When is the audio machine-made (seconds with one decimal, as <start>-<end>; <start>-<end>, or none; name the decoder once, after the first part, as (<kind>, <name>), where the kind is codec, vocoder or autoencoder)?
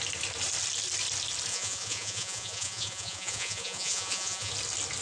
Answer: 1.5-4.5 (vocoder, Vocos)